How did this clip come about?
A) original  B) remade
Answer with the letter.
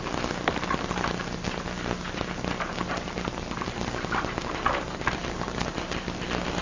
A